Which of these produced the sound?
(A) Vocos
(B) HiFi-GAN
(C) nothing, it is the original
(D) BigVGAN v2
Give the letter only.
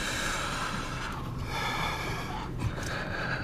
D